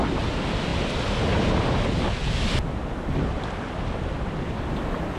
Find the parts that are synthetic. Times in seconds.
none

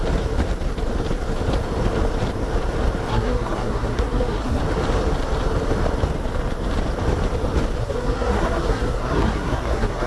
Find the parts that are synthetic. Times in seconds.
3.1-4.6 (codec, SNAC); 7.8-10.1

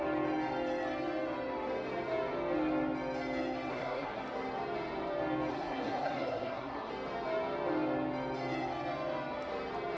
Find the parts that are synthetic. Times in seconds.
3.7-4.2 (codec, SNAC); 5.5-6.9

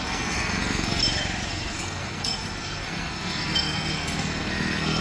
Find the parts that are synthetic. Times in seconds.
0.0-1.0 (codec, SNAC); 1.5-5.0

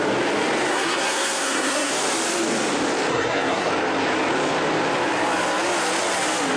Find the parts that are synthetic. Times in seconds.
0.7-1.9 (codec, SNAC); 3.1-3.7

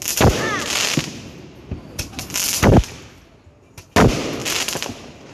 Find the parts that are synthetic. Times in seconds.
none